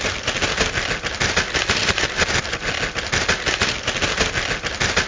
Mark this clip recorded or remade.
recorded